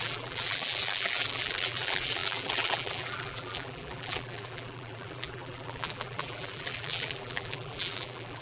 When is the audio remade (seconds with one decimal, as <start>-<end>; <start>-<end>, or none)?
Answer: 0.0-8.4

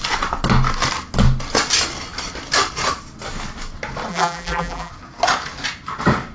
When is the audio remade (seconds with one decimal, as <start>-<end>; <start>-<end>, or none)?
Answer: 4.1-4.9